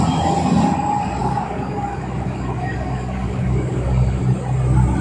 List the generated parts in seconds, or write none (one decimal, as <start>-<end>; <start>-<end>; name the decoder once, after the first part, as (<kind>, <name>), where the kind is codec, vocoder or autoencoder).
1.2-4.2 (codec, DAC)